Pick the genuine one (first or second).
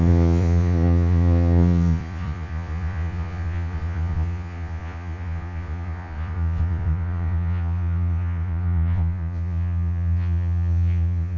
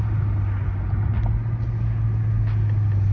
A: second